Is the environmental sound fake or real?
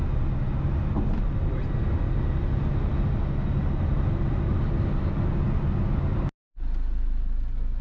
real